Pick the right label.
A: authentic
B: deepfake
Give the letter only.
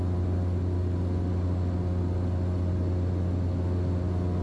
A